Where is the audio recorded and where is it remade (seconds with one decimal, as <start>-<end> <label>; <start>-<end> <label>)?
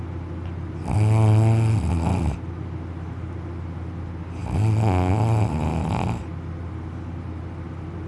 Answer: 0.0-8.1 recorded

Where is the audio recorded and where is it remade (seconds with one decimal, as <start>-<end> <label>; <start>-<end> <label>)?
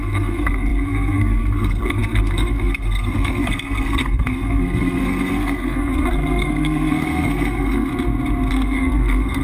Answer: 0.0-7.9 remade; 7.9-8.5 recorded; 8.5-9.4 remade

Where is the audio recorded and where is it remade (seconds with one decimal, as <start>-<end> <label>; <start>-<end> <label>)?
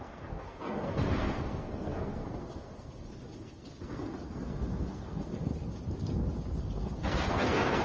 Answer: 0.0-5.5 remade; 5.5-6.6 recorded; 6.6-7.8 remade